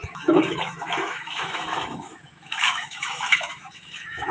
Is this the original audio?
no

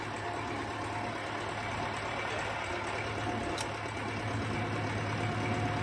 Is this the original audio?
yes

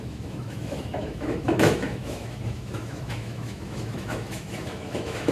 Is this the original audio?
no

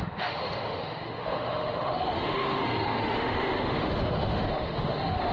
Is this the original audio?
no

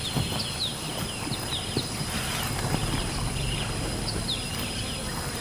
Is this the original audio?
yes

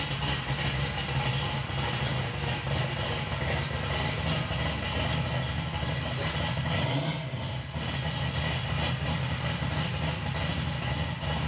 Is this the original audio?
yes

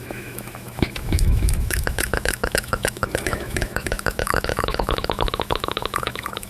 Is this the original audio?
no